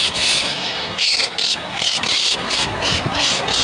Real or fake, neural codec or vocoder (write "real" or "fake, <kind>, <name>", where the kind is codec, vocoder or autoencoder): fake, codec, SNAC